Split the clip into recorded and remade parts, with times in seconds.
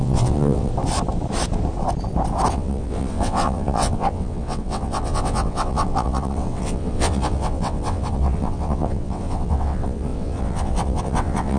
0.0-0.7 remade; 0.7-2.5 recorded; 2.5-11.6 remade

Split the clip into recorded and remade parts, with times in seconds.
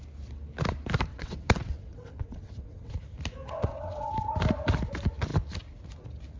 0.0-1.1 recorded; 1.1-2.9 remade; 2.9-3.4 recorded; 3.4-4.1 remade; 4.1-6.4 recorded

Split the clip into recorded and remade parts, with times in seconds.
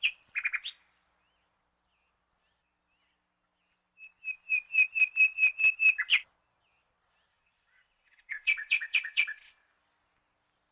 0.0-7.3 recorded; 7.3-9.5 remade; 9.5-10.7 recorded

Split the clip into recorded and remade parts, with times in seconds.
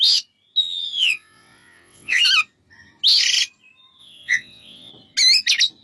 0.0-0.6 recorded; 0.6-2.2 remade; 2.2-4.0 recorded; 4.0-4.9 remade; 4.9-5.8 recorded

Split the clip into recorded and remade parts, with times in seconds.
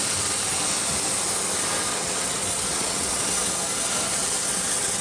0.0-1.9 recorded; 1.9-3.5 remade; 3.5-4.2 recorded; 4.2-5.0 remade